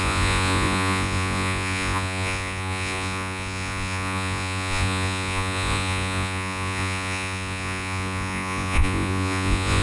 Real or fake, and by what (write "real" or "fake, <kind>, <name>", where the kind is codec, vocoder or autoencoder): fake, vocoder, Vocos